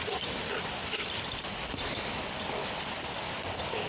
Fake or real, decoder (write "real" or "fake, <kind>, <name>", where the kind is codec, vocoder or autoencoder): fake, vocoder, BigVGAN v2